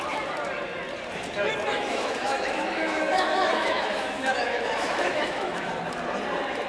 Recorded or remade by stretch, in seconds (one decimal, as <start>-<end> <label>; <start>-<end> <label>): 0.0-1.7 recorded; 1.7-5.7 remade; 5.7-6.7 recorded